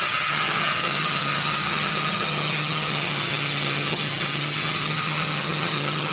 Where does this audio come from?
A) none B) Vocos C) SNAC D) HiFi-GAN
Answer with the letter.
D